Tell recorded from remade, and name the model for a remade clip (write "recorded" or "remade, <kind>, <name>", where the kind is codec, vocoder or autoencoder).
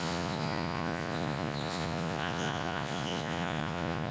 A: remade, vocoder, Vocos